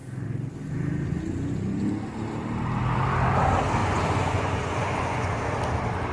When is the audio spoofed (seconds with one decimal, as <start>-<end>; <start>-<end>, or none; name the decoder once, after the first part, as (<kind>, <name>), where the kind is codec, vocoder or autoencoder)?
3.8-5.3 (vocoder, Vocos)